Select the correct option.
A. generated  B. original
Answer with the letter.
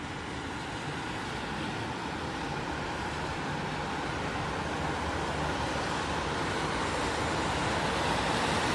B